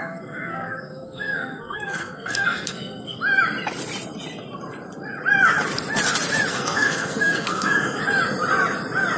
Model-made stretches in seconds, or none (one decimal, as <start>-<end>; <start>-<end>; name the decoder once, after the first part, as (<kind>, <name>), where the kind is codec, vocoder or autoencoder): 0.0-3.2 (codec, SNAC); 6.5-8.0